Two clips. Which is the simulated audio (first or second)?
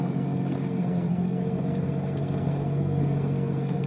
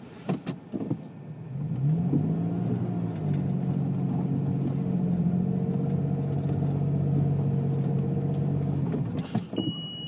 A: first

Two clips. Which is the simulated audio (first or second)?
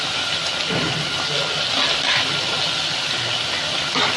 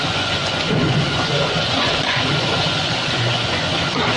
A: second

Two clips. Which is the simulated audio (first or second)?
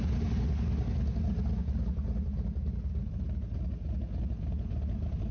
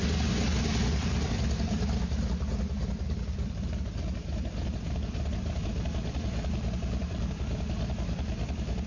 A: second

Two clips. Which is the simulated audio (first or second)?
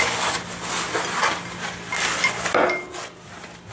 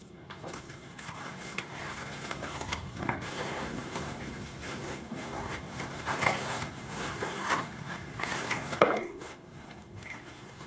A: second